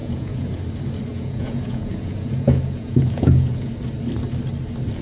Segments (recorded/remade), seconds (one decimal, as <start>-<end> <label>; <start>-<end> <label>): 0.0-0.6 remade; 0.6-1.1 recorded; 1.1-3.7 remade; 3.7-5.0 recorded